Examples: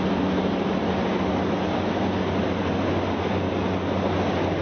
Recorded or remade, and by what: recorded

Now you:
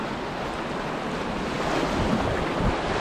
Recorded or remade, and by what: recorded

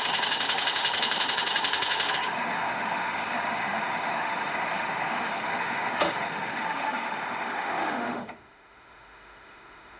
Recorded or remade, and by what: remade, autoencoder, DAC-VAE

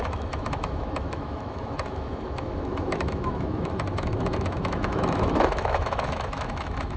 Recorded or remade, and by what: remade, autoencoder, DAC-VAE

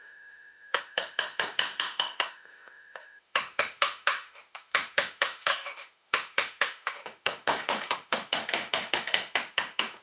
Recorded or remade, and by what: remade, autoencoder, DAC-VAE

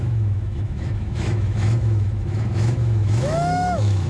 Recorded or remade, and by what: remade, autoencoder, DAC-VAE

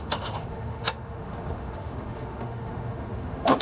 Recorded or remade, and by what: remade, autoencoder, DAC-VAE